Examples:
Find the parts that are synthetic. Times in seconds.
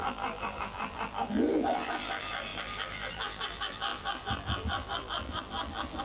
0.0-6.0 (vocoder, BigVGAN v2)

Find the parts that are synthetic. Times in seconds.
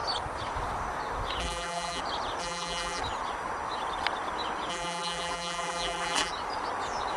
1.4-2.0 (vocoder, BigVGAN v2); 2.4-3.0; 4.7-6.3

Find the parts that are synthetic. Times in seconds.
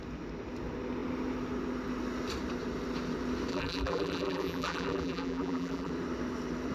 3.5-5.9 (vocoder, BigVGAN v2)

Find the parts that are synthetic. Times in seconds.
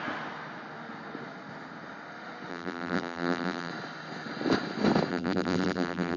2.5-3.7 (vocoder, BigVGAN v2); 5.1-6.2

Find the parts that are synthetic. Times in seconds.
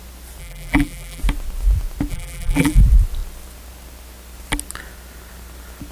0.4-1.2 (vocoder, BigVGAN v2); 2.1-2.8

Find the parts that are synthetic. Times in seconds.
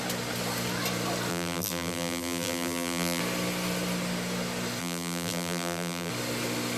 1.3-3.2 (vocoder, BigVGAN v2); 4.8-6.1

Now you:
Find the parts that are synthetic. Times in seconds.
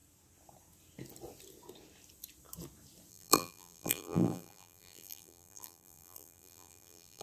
3.1-7.2 (vocoder, BigVGAN v2)